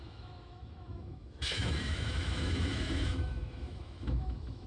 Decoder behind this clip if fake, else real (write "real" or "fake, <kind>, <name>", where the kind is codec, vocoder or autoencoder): fake, autoencoder, DAC-VAE